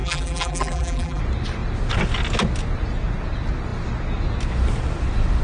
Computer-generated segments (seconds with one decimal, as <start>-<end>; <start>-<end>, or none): 0.0-1.2